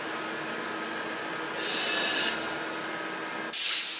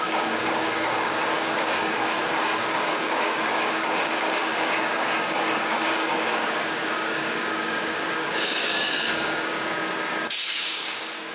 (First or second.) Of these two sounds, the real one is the first